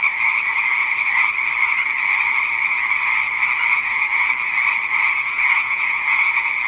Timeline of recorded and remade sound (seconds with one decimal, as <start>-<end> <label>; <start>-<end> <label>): 0.0-3.7 recorded; 3.7-4.3 remade; 4.3-5.1 recorded; 5.1-6.3 remade; 6.3-6.7 recorded